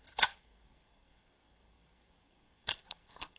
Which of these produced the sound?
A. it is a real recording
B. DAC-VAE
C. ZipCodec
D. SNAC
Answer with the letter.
D